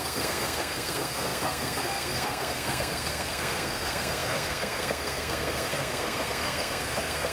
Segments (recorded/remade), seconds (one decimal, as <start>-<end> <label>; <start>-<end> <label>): 0.0-7.3 remade